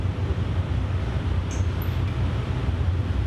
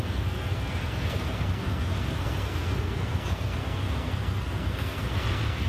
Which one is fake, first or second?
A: second